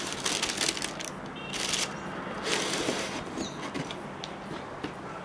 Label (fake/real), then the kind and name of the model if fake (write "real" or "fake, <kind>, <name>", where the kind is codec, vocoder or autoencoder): real